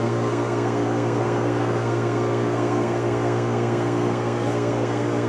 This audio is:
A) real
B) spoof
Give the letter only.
B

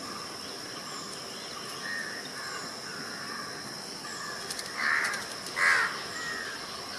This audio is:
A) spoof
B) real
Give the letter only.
B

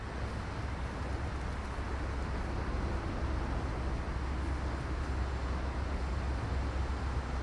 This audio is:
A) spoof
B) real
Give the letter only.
B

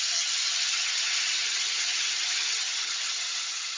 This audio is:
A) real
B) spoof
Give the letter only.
B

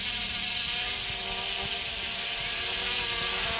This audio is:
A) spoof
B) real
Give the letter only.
B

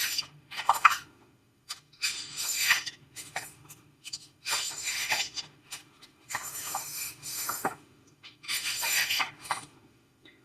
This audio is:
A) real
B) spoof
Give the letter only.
B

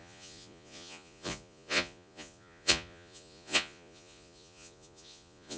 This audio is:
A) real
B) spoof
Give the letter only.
B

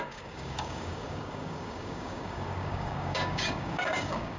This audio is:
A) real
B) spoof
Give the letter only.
B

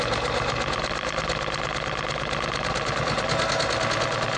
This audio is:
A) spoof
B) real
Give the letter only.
B